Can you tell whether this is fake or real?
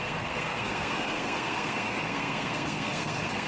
fake